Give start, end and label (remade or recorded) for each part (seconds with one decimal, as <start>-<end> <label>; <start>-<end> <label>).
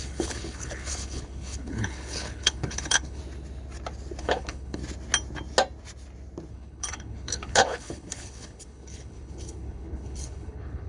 0.0-3.2 remade; 3.2-4.2 recorded; 4.2-4.8 remade; 4.8-6.5 recorded; 6.5-10.9 remade